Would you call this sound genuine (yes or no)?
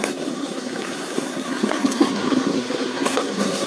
no